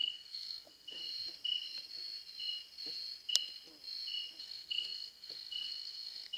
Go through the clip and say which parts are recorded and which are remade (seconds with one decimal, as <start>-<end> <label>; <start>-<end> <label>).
0.0-1.0 remade; 1.0-4.4 recorded; 4.4-6.4 remade